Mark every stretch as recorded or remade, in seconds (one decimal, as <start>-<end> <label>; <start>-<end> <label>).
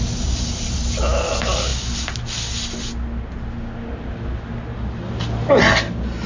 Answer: 0.0-6.3 recorded